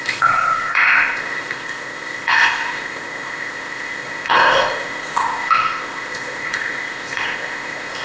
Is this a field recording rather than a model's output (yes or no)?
no